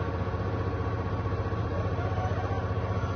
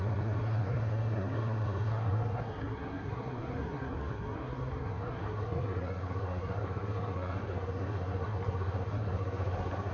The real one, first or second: first